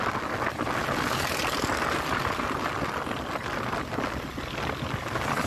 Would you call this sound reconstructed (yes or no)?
no